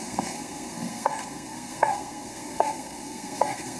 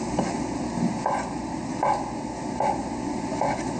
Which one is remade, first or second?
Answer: first